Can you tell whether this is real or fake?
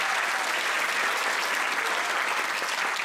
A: real